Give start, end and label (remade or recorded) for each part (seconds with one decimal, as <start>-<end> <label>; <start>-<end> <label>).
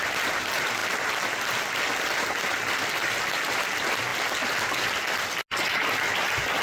0.0-6.6 recorded